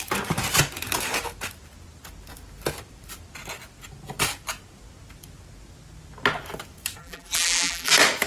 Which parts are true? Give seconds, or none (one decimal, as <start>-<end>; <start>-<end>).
0.0-7.0; 7.9-8.3